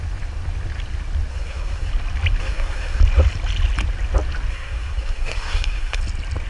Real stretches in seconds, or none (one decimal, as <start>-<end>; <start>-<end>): 0.0-1.3; 1.9-2.4; 3.0-4.5; 6.0-6.5